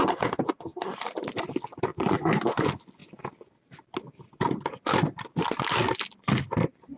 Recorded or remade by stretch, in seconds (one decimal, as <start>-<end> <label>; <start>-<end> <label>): 0.0-1.9 recorded; 1.9-2.6 remade; 2.6-7.0 recorded

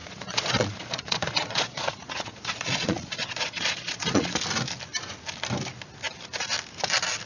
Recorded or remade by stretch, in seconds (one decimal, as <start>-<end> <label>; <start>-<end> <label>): 0.0-4.4 remade; 4.4-7.3 recorded

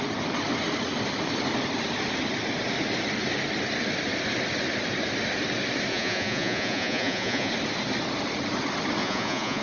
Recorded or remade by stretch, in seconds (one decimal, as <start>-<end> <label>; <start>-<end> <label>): 0.0-5.9 recorded; 5.9-7.5 remade; 7.5-9.0 recorded; 9.0-9.6 remade

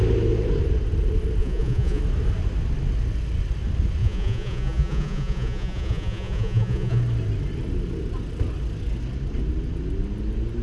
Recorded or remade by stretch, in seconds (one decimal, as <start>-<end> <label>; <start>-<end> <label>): 0.0-1.4 recorded; 1.4-2.0 remade; 2.0-4.0 recorded; 4.0-7.0 remade; 7.0-10.6 recorded

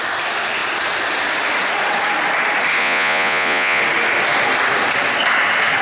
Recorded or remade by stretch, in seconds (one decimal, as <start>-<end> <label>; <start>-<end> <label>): 0.0-2.8 recorded; 2.8-3.8 remade; 3.8-5.8 recorded

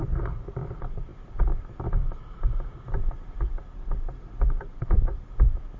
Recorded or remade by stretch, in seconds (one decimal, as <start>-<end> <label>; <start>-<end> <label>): 0.0-5.8 recorded

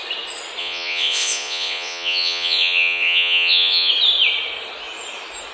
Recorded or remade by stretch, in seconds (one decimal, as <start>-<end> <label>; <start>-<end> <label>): 0.0-0.6 recorded; 0.6-3.9 remade; 3.9-5.5 recorded

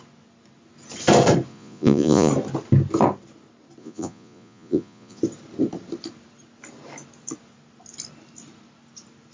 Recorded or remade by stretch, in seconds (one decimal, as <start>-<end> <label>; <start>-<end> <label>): 0.0-1.5 recorded; 1.5-2.3 remade; 2.3-3.8 recorded; 3.8-5.2 remade; 5.2-9.3 recorded